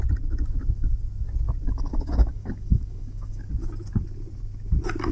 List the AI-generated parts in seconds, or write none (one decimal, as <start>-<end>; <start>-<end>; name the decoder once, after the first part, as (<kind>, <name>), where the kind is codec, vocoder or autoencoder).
1.9-3.4 (autoencoder, DAC-VAE)